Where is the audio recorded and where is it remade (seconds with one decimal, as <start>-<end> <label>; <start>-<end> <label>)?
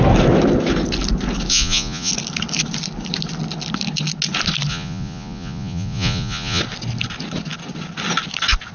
0.0-1.5 recorded; 1.5-2.1 remade; 2.1-4.7 recorded; 4.7-6.6 remade; 6.6-8.7 recorded